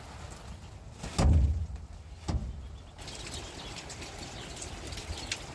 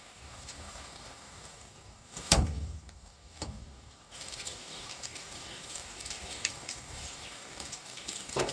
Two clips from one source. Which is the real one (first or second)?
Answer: first